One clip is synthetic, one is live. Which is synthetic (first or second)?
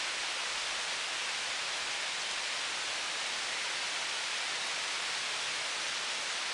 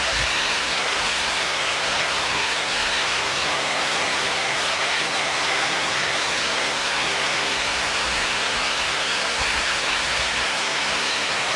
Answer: second